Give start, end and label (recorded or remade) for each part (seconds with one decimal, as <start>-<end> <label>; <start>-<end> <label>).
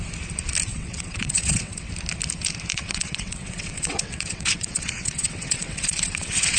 0.0-0.7 recorded; 0.7-1.9 remade; 1.9-2.7 recorded; 2.7-6.6 remade